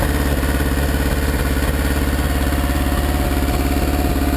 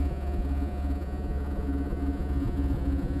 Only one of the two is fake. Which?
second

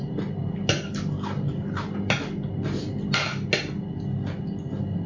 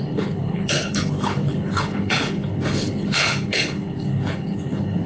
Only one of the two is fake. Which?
second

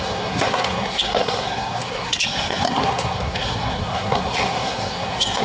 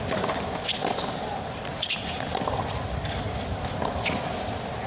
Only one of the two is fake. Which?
first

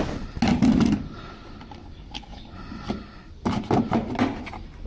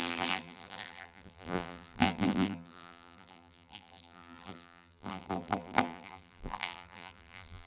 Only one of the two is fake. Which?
second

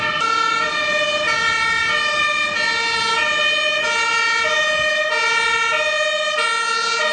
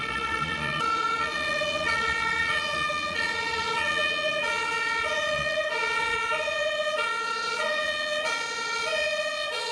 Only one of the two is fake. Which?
second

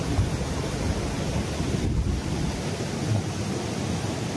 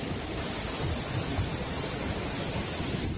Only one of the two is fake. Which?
second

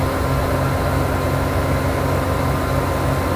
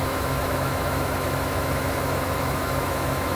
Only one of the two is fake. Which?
second